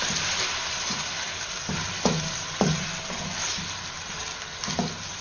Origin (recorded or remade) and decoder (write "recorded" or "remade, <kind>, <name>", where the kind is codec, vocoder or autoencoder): recorded